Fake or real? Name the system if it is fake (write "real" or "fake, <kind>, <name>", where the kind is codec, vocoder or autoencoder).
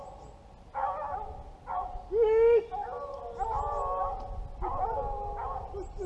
real